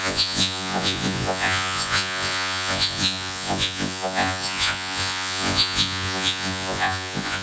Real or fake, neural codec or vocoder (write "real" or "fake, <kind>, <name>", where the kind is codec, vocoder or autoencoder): fake, vocoder, Vocos